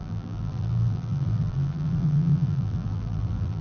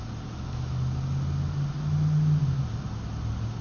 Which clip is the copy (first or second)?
first